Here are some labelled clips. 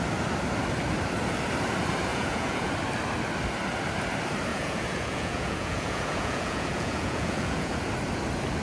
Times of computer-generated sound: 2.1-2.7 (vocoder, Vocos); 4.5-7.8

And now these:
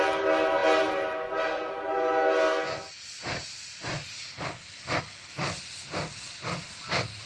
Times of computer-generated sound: none

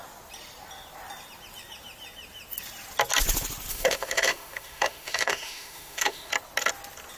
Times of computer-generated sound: 3.7-6.3 (autoencoder, DAC-VAE)

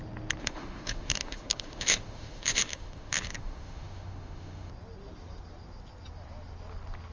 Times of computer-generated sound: 0.4-4.7 (autoencoder, DAC-VAE)